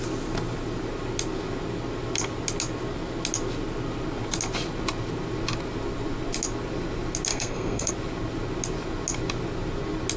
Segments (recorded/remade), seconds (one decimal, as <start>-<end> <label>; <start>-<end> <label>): 0.0-7.3 recorded; 7.3-7.9 remade; 7.9-10.2 recorded